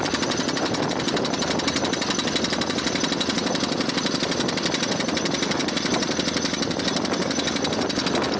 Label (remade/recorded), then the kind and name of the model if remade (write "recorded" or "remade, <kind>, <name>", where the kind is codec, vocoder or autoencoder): recorded